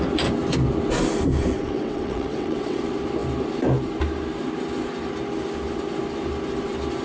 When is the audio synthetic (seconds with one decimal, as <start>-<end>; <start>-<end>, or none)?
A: 1.5-2.8